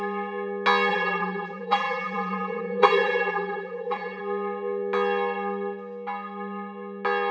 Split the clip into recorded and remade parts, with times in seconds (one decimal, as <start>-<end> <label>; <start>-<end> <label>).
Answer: 0.0-0.9 recorded; 0.9-4.2 remade; 4.2-7.3 recorded